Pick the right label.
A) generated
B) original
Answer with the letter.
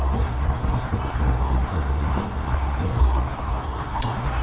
A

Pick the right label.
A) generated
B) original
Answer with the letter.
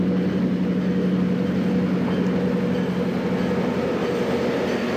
B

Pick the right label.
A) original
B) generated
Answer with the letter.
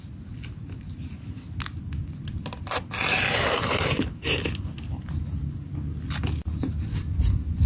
A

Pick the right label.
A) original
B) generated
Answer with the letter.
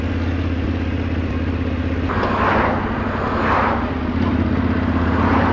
A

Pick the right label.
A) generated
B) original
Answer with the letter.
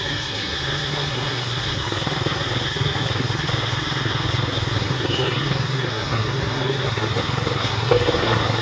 A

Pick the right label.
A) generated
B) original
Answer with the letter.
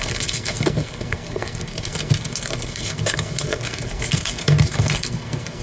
A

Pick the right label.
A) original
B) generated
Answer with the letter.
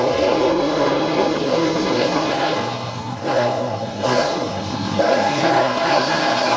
B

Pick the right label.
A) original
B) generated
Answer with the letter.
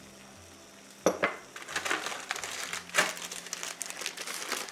A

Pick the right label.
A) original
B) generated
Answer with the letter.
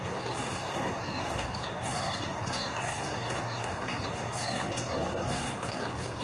B